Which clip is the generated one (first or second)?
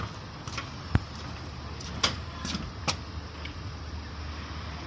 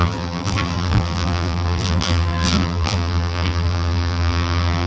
second